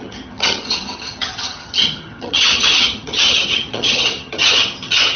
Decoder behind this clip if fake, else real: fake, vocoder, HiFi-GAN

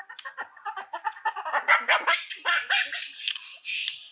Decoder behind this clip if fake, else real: real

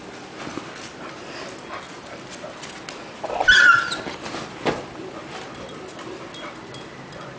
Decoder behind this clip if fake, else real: real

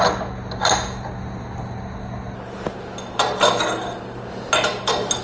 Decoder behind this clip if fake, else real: real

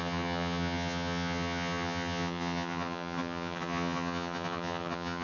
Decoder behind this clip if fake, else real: fake, vocoder, HiFi-GAN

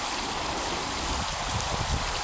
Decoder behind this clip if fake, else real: real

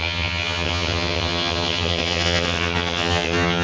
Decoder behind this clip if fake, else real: fake, vocoder, HiFi-GAN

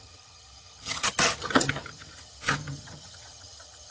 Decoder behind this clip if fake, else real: fake, vocoder, HiFi-GAN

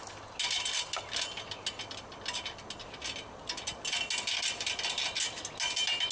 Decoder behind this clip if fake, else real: real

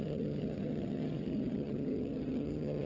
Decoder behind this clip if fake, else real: fake, vocoder, HiFi-GAN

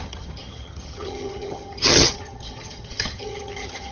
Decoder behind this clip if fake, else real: fake, vocoder, HiFi-GAN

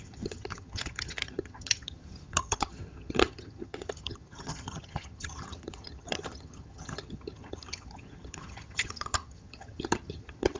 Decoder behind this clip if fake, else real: fake, vocoder, HiFi-GAN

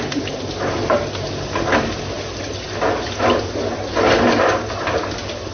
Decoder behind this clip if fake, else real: real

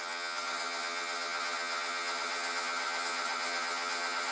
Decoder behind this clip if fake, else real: fake, vocoder, HiFi-GAN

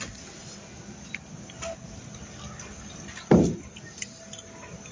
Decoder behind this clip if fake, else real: real